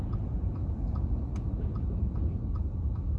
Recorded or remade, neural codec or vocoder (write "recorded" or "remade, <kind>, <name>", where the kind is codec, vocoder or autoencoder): recorded